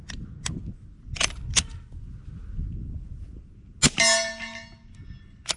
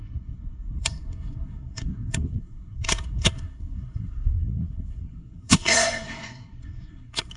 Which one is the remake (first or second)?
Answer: second